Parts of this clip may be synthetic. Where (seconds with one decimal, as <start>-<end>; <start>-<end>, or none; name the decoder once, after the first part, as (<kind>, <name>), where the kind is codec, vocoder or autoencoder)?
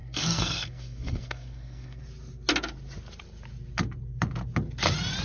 0.0-2.0 (codec, SNAC)